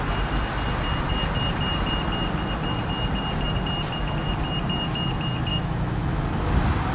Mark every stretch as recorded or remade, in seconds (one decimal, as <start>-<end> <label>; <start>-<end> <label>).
0.0-5.5 recorded; 5.5-6.2 remade; 6.2-6.9 recorded